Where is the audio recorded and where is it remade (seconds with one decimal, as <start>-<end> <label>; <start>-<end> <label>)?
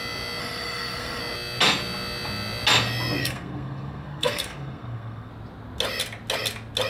0.0-0.4 recorded; 0.4-1.2 remade; 1.2-3.2 recorded; 3.2-5.3 remade; 5.3-6.9 recorded